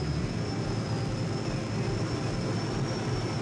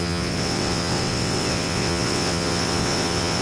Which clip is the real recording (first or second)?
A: first